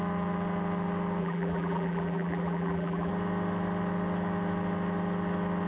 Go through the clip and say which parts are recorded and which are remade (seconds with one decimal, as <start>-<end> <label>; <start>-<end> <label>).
0.0-1.2 recorded; 1.2-3.1 remade; 3.1-5.7 recorded